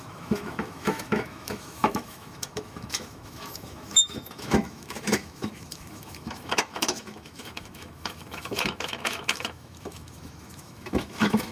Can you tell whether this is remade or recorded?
remade